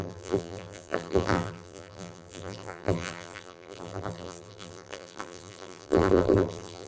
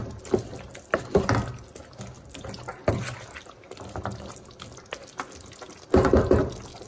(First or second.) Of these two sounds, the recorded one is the second